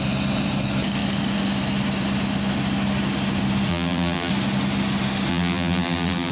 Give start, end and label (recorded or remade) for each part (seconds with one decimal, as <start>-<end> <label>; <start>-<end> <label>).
0.0-3.7 recorded; 3.7-4.3 remade; 4.3-5.3 recorded; 5.3-6.3 remade